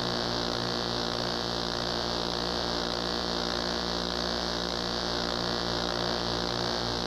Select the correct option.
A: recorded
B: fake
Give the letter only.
A